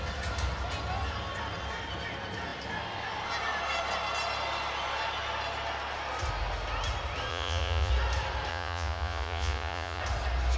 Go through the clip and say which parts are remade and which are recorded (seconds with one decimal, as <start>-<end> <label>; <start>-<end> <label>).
0.0-7.3 recorded; 7.3-7.9 remade; 7.9-8.5 recorded; 8.5-10.0 remade; 10.0-10.6 recorded